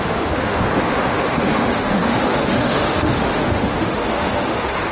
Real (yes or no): no